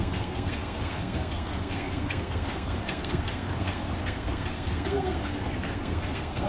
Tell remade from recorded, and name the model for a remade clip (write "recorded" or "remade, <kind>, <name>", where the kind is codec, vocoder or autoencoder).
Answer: remade, codec, SNAC